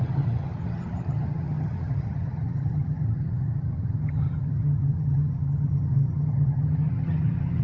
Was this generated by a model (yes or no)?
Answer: yes